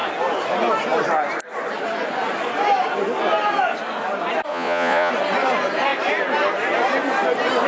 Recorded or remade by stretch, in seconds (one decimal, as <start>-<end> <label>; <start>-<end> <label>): 0.0-4.5 recorded; 4.5-5.1 remade; 5.1-7.7 recorded